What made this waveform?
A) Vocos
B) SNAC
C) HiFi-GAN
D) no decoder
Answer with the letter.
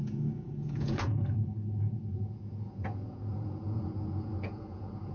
A